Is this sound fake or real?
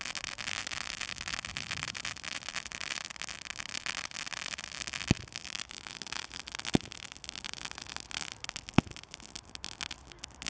real